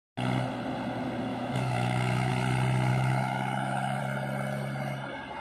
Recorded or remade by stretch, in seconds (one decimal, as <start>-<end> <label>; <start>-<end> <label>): 0.0-1.3 recorded; 1.3-2.3 remade; 2.3-2.9 recorded; 2.9-4.0 remade; 4.0-5.4 recorded